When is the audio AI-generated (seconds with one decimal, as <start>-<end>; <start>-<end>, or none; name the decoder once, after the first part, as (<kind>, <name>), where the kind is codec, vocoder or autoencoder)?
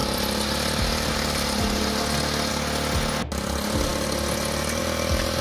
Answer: none